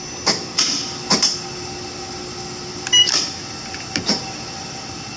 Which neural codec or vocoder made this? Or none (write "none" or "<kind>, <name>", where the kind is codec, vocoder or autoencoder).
none